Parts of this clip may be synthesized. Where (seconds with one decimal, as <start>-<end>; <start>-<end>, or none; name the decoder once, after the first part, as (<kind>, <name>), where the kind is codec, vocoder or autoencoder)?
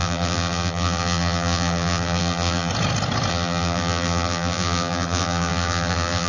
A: 0.0-2.7 (vocoder, BigVGAN v2); 3.3-6.3